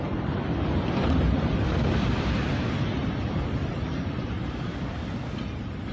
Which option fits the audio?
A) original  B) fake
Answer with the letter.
B